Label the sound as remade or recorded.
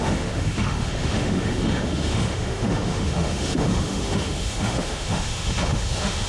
remade